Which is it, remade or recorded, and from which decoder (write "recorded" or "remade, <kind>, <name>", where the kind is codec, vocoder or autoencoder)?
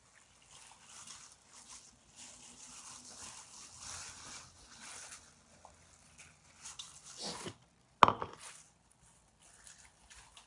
recorded